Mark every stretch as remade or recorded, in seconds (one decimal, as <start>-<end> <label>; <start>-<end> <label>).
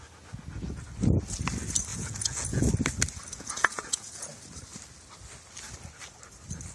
0.0-1.9 recorded; 1.9-2.7 remade; 2.7-3.3 recorded; 3.3-4.3 remade; 4.3-6.7 recorded